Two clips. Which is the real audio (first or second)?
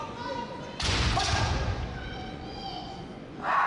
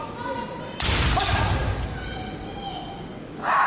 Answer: second